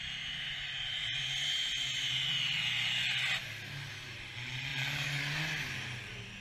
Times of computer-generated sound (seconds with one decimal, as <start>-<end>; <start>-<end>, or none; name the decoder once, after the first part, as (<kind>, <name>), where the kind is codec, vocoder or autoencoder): none